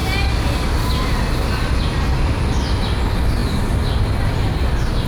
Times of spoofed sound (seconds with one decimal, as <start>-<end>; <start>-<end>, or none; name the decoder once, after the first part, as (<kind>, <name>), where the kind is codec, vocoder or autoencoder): 1.5-5.1 (vocoder, BigVGAN v2)